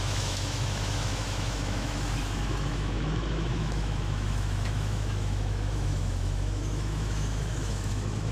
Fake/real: fake